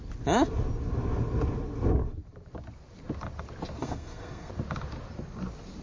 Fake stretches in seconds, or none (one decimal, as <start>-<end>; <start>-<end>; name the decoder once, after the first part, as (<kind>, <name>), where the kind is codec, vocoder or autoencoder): 3.8-4.5 (codec, SNAC)